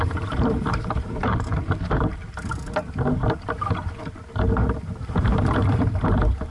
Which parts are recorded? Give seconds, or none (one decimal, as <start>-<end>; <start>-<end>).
1.3-5.2